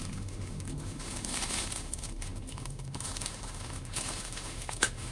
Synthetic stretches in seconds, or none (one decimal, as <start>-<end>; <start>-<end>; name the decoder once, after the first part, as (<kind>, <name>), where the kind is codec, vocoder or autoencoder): 0.0-5.1 (autoencoder, DAC-VAE)